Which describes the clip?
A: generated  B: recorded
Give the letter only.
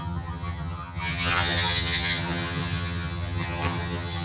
A